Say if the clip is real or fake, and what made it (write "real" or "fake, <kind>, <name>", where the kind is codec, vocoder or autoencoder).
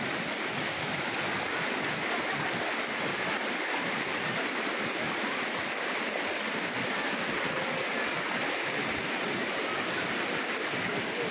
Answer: real